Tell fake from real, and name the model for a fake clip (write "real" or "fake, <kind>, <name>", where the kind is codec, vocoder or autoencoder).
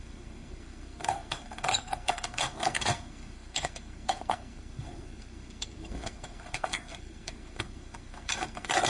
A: fake, codec, SNAC